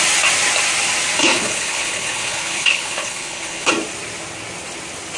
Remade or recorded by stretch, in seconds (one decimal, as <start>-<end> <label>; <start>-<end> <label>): 0.0-1.2 recorded; 1.2-3.7 remade; 3.7-5.2 recorded